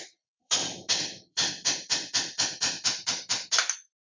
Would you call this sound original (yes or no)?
no